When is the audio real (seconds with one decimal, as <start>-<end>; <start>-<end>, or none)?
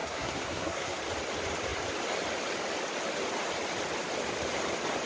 1.0-5.1